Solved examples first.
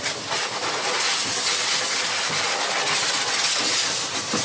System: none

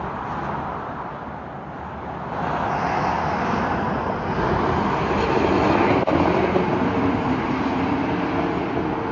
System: none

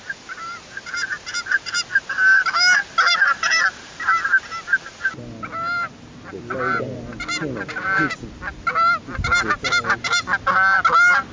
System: none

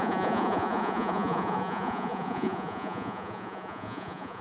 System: vocoder, Vocos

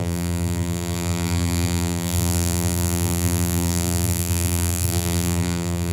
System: vocoder, BigVGAN v2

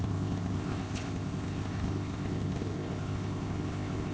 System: codec, ZipCodec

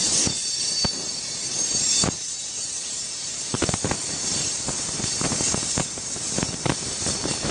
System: vocoder, BigVGAN v2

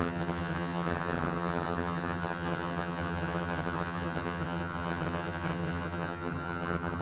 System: vocoder, HiFi-GAN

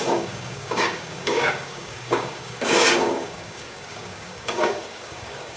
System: codec, DAC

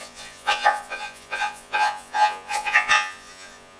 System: vocoder, Vocos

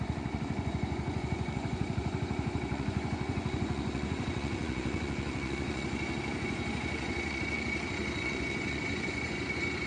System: vocoder, Vocos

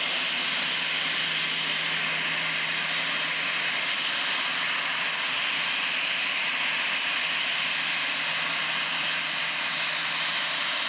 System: none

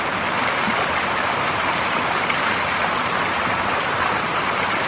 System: none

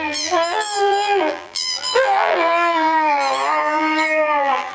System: vocoder, BigVGAN v2